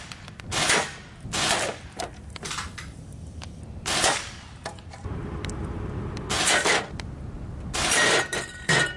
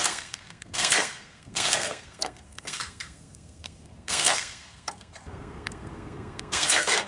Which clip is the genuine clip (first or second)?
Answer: first